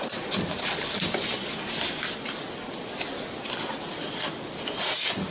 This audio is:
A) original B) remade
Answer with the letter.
A